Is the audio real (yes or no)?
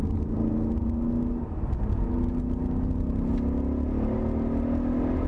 yes